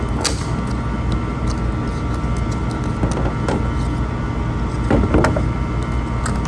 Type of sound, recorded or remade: recorded